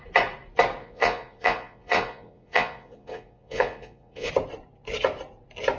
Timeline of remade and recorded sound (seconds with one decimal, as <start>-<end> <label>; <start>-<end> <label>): 0.0-0.8 recorded; 0.8-4.3 remade; 4.3-5.8 recorded